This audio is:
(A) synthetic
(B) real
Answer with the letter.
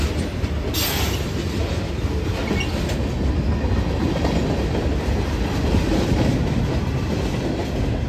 B